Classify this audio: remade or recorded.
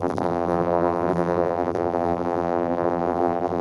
remade